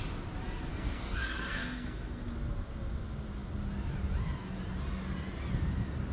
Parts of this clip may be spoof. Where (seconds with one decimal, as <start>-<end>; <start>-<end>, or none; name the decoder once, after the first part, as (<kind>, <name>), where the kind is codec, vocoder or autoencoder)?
0.7-2.2 (codec, SNAC)